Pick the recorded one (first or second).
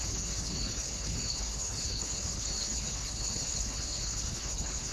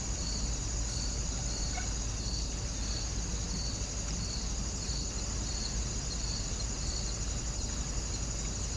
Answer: second